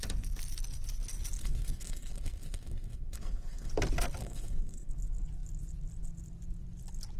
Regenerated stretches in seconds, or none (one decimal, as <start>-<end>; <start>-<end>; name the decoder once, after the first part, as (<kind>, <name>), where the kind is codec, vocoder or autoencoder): 1.4-3.7 (codec, SNAC); 4.2-4.9